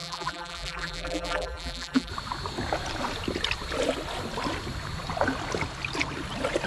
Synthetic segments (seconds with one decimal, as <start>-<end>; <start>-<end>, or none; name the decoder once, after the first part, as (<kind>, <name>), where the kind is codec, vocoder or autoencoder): 0.0-2.1 (vocoder, BigVGAN v2)